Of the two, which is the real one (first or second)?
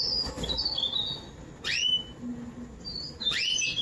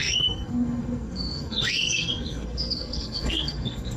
first